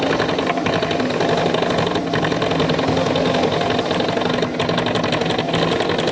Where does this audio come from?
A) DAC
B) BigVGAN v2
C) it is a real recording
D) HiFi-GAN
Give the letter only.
C